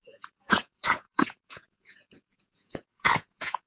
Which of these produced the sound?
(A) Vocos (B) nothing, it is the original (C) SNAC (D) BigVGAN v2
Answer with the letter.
A